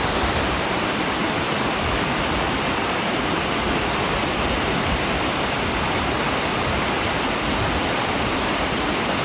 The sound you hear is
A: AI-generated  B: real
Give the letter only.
B